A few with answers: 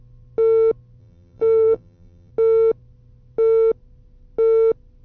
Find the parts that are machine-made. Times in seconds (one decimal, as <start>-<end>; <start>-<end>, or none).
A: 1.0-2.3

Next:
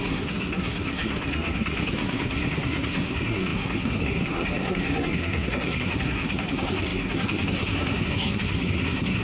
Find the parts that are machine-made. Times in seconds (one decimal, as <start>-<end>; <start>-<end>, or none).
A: 0.0-9.2

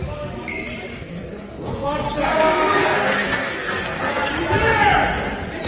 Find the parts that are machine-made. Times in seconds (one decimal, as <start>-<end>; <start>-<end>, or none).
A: 0.9-4.3

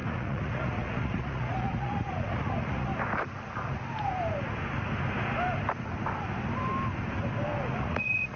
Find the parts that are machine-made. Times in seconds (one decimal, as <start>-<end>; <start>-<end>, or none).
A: 0.0-2.9; 7.8-8.4

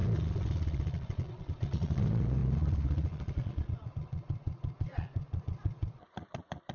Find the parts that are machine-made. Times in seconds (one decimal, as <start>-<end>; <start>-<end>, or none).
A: 0.0-6.7